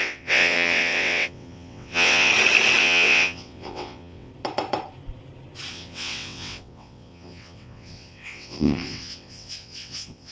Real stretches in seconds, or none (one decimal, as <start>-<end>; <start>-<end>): 2.3-2.8; 4.3-5.7